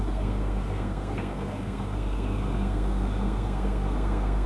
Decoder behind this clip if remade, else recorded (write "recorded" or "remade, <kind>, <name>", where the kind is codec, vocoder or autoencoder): remade, codec, SNAC